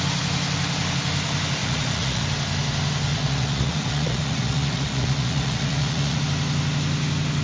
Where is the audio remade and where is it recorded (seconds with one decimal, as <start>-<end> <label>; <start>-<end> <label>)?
0.0-1.6 recorded; 1.6-2.2 remade; 2.2-3.1 recorded; 3.1-6.2 remade; 6.2-7.4 recorded